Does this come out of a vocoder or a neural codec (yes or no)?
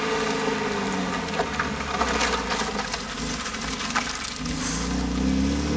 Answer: no